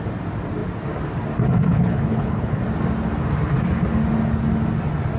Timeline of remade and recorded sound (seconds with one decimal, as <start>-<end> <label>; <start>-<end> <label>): 0.0-1.7 recorded; 1.7-2.6 remade; 2.6-5.2 recorded